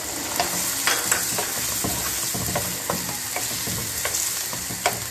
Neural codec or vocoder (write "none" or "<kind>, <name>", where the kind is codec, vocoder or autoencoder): none